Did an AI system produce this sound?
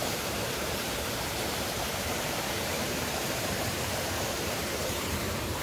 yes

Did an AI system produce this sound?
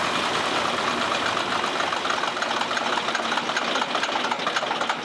no